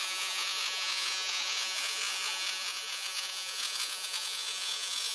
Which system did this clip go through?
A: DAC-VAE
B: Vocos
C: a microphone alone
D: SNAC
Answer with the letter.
B